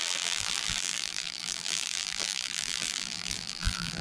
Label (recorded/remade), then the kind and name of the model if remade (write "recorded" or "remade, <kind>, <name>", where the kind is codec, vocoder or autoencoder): remade, vocoder, BigVGAN v2